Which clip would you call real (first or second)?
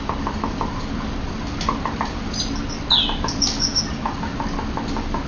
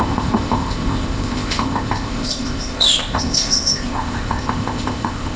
first